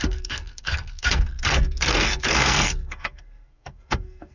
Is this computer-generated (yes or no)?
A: yes